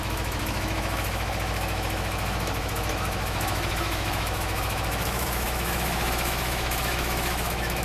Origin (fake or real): fake